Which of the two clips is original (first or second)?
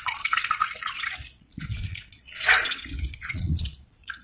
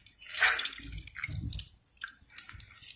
second